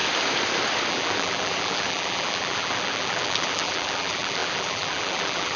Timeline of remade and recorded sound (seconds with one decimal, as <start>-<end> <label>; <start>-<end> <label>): 0.0-0.9 recorded; 0.9-5.6 remade